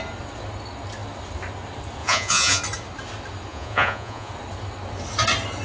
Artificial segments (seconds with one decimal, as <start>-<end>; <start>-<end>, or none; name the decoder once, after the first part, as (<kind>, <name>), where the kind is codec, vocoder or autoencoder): 2.0-2.6 (vocoder, Vocos); 3.5-4.3